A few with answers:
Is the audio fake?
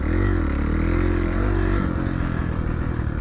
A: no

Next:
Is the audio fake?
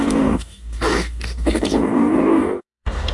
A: yes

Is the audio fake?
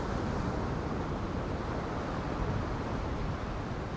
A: no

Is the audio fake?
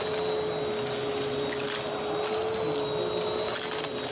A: no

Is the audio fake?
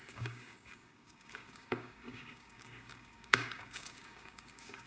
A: yes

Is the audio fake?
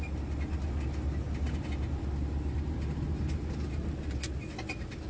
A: no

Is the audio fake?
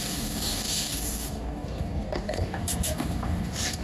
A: yes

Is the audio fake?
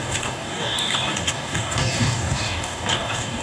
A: yes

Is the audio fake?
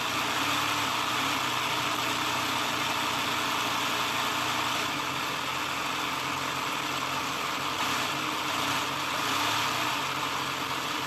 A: no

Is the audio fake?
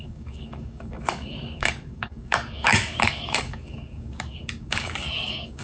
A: yes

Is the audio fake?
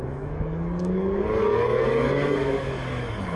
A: yes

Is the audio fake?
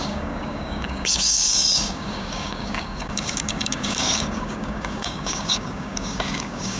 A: yes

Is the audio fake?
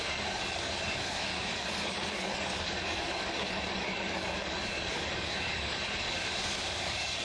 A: yes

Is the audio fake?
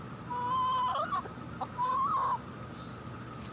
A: no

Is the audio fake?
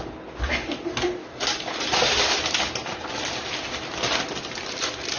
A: no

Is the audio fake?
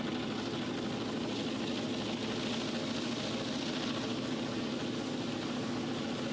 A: no